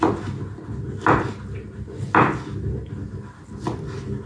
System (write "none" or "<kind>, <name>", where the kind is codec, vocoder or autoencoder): none